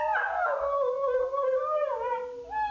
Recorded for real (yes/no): yes